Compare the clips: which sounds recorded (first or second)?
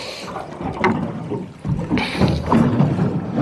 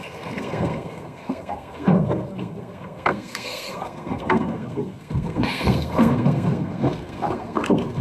first